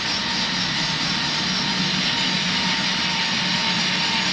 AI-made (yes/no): no